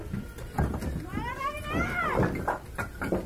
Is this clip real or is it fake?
real